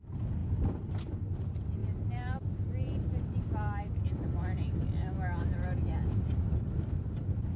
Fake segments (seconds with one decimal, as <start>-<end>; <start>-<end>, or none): none